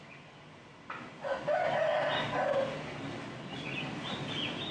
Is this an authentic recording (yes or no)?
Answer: yes